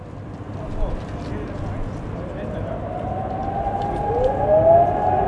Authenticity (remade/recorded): recorded